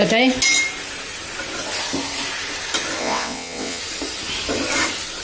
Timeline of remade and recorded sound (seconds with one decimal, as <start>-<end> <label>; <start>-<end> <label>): 0.0-3.0 recorded; 3.0-3.8 remade; 3.8-5.2 recorded